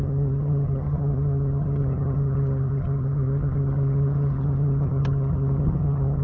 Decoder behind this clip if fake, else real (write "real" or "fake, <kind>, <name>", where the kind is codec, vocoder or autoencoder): fake, vocoder, HiFi-GAN